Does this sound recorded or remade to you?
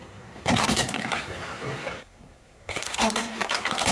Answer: remade